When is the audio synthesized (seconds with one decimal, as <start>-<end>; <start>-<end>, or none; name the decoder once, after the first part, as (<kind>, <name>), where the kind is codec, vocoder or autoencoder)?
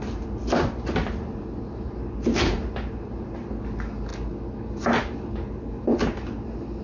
none